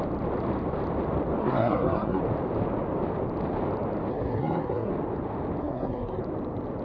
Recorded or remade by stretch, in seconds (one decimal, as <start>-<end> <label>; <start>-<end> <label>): 0.0-1.4 recorded; 1.4-2.2 remade; 2.2-4.1 recorded; 4.1-4.9 remade; 4.9-5.6 recorded; 5.6-6.2 remade; 6.2-6.8 recorded